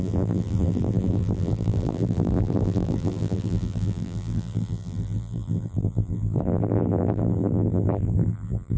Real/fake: fake